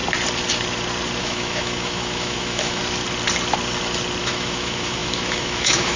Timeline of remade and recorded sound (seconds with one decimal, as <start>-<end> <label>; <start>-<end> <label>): 0.0-1.2 recorded; 1.2-2.8 remade; 2.8-4.2 recorded; 4.2-6.0 remade